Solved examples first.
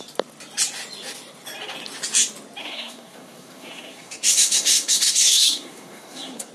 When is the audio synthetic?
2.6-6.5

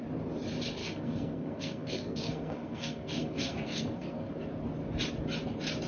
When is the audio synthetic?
0.8-4.3

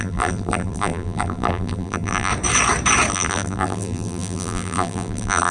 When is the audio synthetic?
0.0-2.3; 3.1-5.5

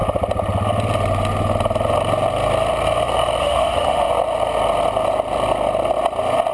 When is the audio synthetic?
3.4-4.1

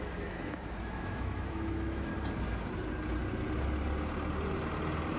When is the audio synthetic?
0.0-2.1

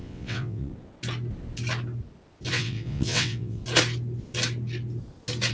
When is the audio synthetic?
0.0-0.7; 2.5-3.6